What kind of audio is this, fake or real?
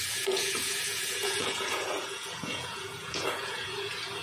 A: fake